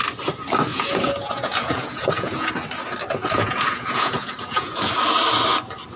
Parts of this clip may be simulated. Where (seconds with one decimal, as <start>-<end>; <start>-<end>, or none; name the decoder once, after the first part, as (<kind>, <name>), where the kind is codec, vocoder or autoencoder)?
0.7-2.5 (vocoder, Vocos); 3.2-4.9